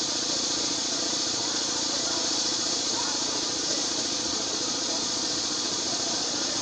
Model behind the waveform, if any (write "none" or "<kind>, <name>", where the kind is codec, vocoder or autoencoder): vocoder, Vocos